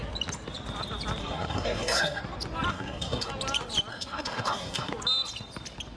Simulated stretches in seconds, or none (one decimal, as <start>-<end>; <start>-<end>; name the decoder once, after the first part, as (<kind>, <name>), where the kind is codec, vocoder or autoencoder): 1.2-2.2 (codec, SNAC); 2.7-3.3; 3.9-4.9